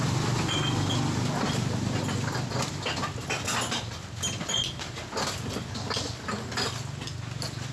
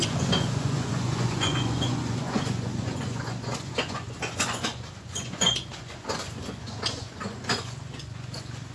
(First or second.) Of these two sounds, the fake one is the second